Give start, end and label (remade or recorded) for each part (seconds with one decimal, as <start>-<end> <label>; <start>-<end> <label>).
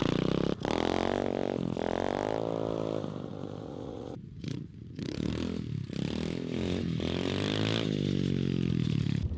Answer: 0.0-3.3 recorded; 3.3-5.3 remade; 5.3-9.4 recorded